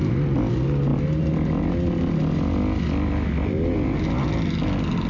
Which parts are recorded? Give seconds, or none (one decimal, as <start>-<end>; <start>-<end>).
0.0-5.1